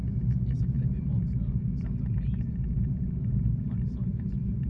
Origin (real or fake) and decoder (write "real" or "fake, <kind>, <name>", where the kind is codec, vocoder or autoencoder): fake, vocoder, BigVGAN v2